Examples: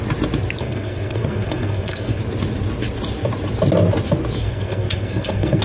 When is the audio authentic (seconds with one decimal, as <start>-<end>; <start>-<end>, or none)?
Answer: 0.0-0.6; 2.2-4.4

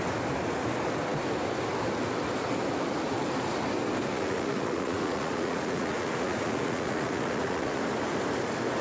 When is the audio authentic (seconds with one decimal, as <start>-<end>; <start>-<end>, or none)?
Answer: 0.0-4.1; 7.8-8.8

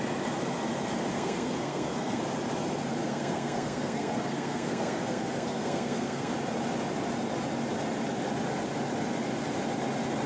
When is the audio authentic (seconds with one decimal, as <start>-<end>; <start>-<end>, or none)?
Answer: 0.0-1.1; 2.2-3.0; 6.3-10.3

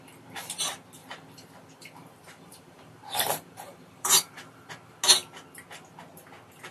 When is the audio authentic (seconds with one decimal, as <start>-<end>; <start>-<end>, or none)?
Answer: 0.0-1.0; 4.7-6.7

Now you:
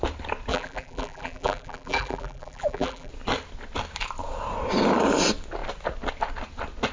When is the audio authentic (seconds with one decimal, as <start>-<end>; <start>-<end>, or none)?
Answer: 0.0-0.5; 3.1-6.9

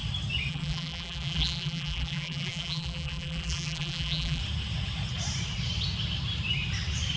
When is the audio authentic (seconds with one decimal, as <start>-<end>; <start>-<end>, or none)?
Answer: 0.0-0.5; 4.4-7.2